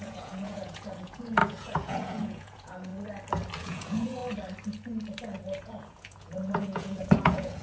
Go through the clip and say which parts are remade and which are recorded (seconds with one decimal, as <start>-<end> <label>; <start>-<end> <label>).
0.0-2.9 remade; 2.9-3.6 recorded; 3.6-4.2 remade; 4.2-5.6 recorded; 5.6-7.6 remade

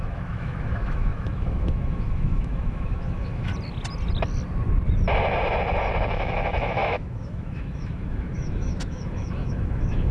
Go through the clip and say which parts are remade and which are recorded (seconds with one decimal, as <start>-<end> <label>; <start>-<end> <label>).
0.0-3.5 remade; 3.5-6.1 recorded; 6.1-10.1 remade